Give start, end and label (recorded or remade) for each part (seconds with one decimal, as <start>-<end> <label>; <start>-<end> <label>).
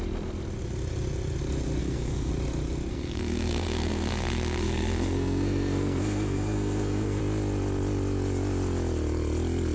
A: 0.0-1.8 recorded; 1.8-2.3 remade; 2.3-2.9 recorded; 2.9-7.2 remade; 7.2-9.7 recorded